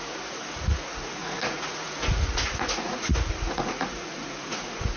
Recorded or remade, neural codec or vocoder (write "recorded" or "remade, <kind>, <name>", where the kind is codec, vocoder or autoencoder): remade, vocoder, Vocos